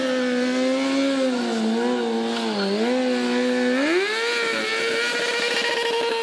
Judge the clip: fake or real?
real